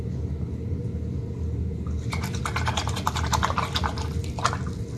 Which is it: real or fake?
real